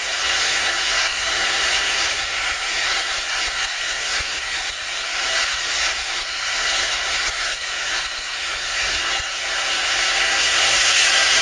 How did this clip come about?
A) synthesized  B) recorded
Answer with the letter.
A